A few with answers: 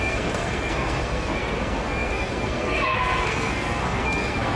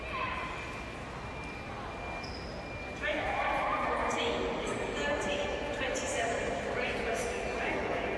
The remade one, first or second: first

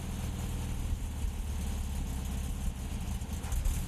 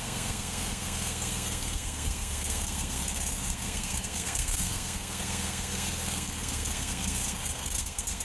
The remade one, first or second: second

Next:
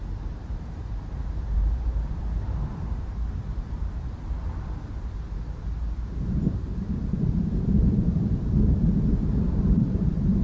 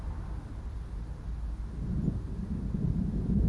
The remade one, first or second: first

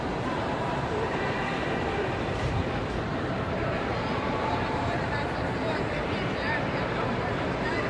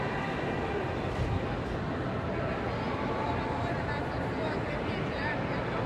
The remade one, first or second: first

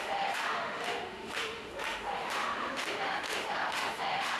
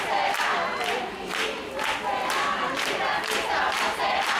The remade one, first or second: first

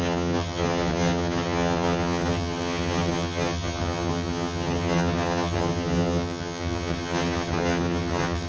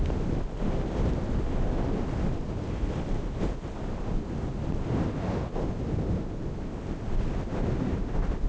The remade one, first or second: first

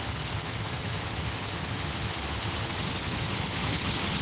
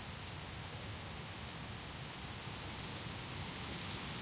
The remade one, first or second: first